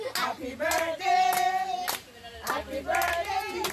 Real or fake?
real